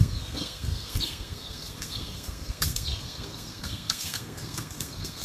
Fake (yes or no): yes